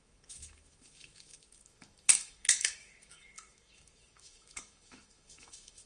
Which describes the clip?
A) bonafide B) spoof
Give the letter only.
B